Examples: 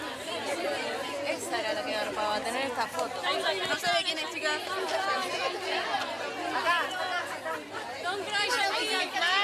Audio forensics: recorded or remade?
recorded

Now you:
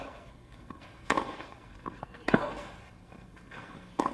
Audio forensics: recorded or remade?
remade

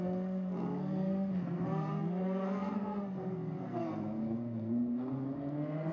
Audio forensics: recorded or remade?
remade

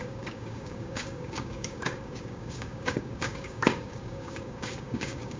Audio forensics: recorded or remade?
remade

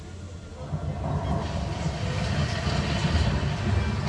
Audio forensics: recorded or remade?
recorded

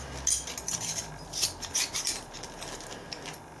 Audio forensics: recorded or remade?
recorded